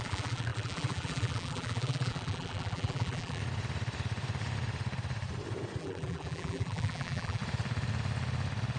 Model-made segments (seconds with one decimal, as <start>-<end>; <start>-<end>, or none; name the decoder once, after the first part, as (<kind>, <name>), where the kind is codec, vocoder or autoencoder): 0.0-3.4 (vocoder, BigVGAN v2); 5.8-7.4